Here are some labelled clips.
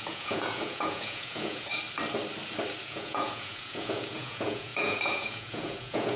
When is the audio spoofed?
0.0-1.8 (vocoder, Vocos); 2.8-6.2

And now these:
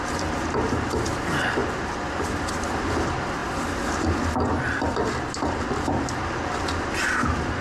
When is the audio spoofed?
none

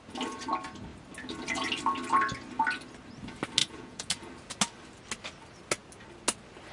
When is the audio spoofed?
3.6-4.1 (vocoder, Vocos)